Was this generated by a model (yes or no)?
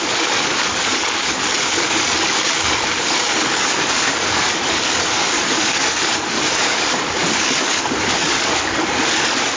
yes